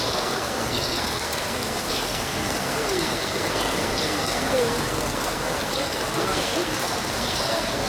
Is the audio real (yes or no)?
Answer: no